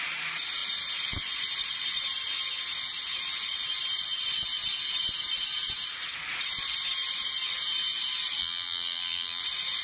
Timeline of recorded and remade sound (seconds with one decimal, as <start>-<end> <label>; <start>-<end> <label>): 0.0-8.4 recorded; 8.4-9.4 remade; 9.4-9.8 recorded